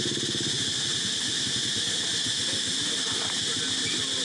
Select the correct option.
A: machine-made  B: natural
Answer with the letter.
B